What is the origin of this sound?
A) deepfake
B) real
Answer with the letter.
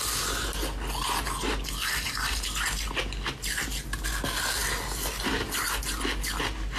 B